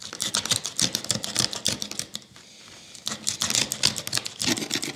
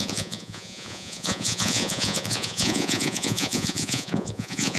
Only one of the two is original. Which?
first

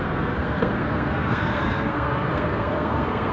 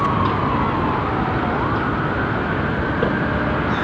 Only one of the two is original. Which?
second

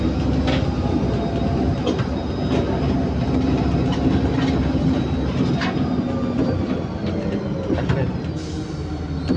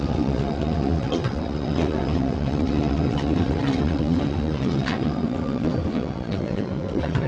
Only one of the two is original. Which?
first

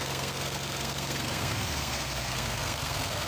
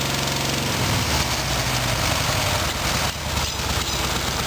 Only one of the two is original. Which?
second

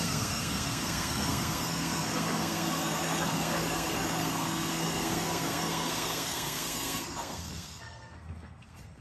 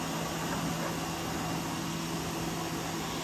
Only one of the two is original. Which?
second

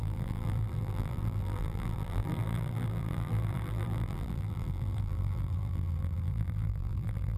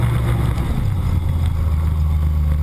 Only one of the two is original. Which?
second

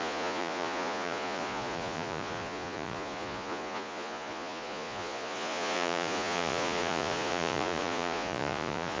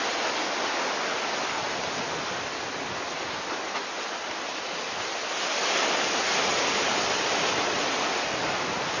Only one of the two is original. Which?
second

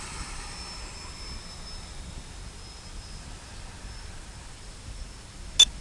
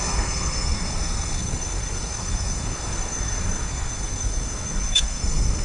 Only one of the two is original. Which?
first